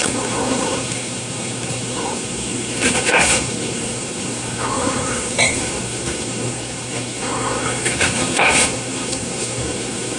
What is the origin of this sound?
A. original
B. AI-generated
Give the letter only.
B